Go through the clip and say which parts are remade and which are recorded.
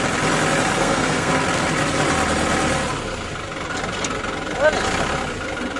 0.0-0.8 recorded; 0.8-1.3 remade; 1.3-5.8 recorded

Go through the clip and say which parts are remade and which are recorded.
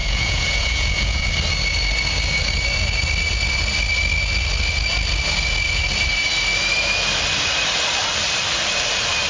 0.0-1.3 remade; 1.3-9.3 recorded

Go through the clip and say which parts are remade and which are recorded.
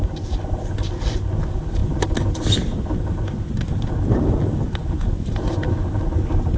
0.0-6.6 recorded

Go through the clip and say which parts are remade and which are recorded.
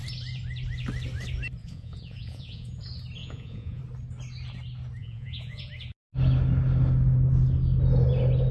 0.0-1.6 recorded; 1.6-2.8 remade; 2.8-3.2 recorded; 3.2-3.8 remade; 3.8-5.0 recorded; 5.0-5.7 remade; 5.7-8.5 recorded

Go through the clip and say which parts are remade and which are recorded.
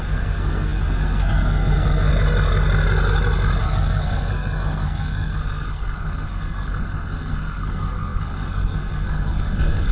0.0-2.1 remade; 2.1-3.6 recorded; 3.6-9.9 remade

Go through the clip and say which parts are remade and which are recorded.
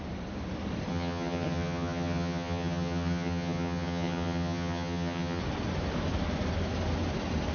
0.0-0.9 recorded; 0.9-5.4 remade; 5.4-7.5 recorded